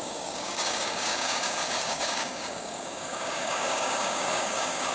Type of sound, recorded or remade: remade